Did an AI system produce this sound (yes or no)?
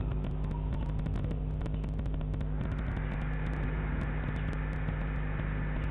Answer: no